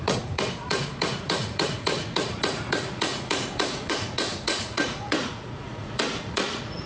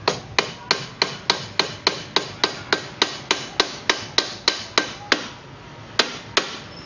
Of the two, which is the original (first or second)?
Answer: second